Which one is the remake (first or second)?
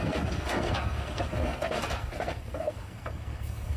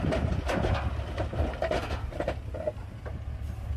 first